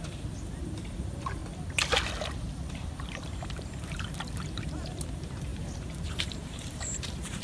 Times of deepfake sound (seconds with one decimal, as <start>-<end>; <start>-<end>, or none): 0.0-1.4; 2.7-7.4